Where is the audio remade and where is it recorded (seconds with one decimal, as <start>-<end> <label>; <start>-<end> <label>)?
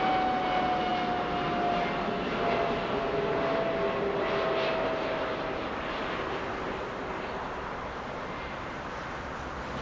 0.0-9.8 recorded